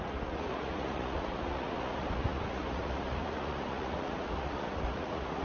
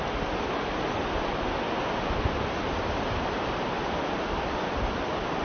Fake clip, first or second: first